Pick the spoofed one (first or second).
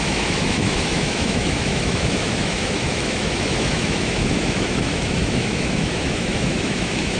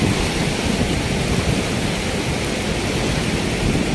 first